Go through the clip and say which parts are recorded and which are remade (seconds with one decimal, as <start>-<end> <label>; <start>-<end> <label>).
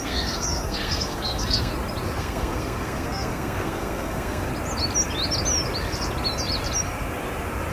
0.0-1.7 remade; 1.7-2.2 recorded; 2.2-4.5 remade; 4.5-7.7 recorded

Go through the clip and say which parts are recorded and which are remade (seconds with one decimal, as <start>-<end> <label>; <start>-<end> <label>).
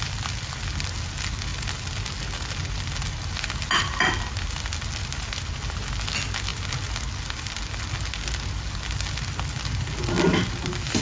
0.0-11.0 recorded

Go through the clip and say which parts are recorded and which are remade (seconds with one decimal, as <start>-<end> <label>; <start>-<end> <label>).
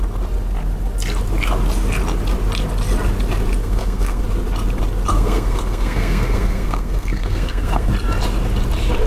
0.0-3.6 recorded; 3.6-4.2 remade; 4.2-5.1 recorded; 5.1-7.9 remade; 7.9-9.1 recorded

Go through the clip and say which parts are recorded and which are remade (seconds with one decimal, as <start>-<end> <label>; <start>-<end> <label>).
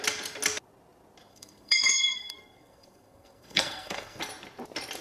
0.0-1.3 recorded; 1.3-4.2 remade; 4.2-5.0 recorded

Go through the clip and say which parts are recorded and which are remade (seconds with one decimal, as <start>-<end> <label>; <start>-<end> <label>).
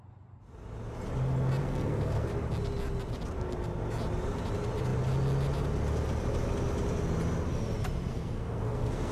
0.0-1.6 recorded; 1.6-2.3 remade; 2.3-8.1 recorded; 8.1-9.1 remade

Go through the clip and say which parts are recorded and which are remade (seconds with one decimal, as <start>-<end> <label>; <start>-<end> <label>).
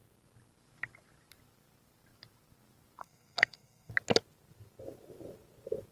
0.0-3.0 recorded; 3.0-3.9 remade; 3.9-5.9 recorded